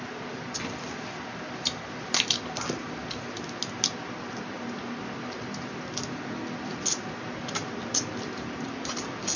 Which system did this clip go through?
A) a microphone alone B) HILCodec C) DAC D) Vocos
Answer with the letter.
A